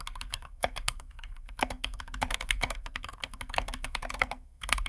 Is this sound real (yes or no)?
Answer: no